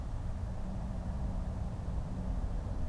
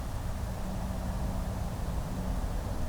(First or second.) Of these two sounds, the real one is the second